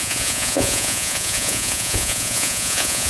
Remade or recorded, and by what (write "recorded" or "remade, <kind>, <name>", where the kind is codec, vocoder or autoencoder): remade, vocoder, Vocos